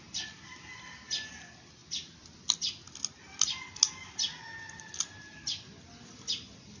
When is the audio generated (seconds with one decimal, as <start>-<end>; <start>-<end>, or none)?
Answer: none